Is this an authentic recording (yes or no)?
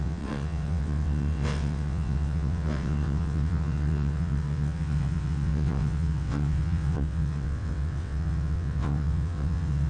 no